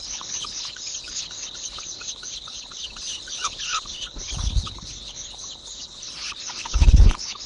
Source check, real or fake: fake